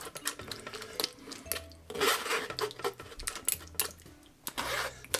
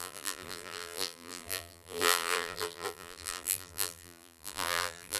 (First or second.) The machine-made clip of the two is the second